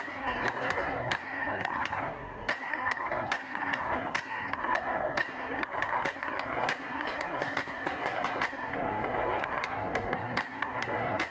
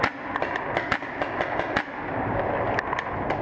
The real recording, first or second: second